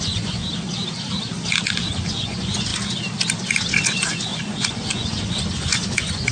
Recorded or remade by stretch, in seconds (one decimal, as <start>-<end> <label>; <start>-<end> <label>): 0.0-0.4 remade; 0.4-2.1 recorded; 2.1-2.7 remade; 2.7-3.7 recorded; 3.7-6.3 remade